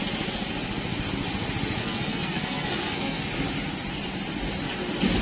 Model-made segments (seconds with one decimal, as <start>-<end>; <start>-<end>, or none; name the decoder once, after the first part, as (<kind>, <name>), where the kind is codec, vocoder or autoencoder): 1.8-3.2 (codec, SNAC)